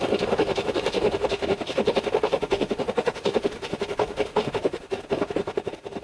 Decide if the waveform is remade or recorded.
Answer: remade